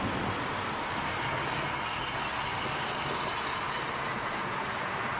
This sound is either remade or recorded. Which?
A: recorded